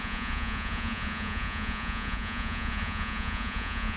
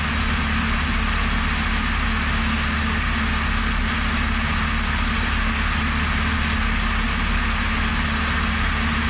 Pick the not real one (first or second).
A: first